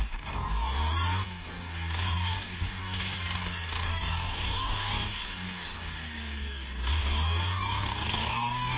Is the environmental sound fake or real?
fake